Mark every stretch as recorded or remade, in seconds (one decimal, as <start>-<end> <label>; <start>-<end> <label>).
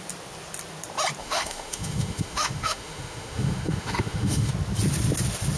0.0-1.2 recorded; 1.2-4.5 remade; 4.5-5.6 recorded